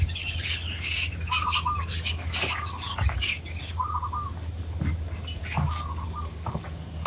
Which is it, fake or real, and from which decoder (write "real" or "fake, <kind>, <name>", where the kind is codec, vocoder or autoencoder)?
fake, codec, DAC